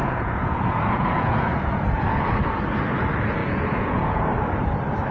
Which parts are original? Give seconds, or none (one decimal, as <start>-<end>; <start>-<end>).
2.6-3.4; 4.2-5.1